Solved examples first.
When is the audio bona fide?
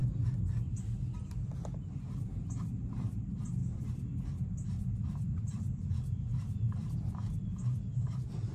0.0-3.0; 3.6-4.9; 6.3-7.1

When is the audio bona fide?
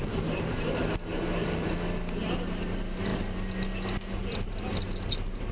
1.7-5.5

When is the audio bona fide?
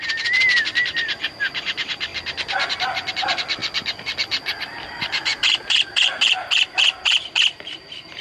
2.1-3.1; 3.6-4.6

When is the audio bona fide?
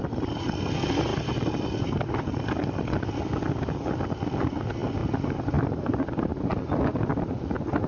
0.0-1.1; 2.1-7.9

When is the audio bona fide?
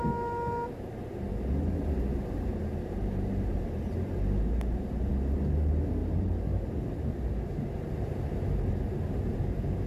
0.0-2.1; 5.1-6.0; 6.7-9.9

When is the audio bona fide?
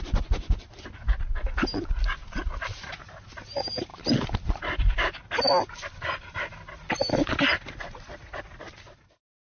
0.0-2.2; 2.9-9.6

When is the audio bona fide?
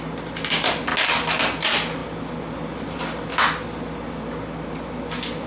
0.0-5.5